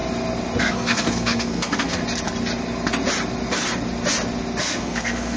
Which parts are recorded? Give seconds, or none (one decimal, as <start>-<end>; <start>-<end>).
0.0-0.6; 2.0-4.6